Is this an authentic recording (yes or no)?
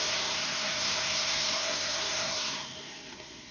no